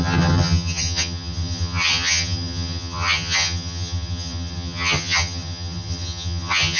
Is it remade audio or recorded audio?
remade